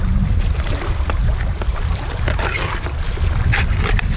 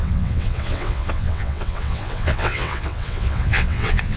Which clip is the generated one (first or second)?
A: second